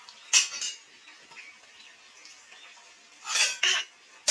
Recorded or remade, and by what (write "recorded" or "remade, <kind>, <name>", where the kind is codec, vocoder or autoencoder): recorded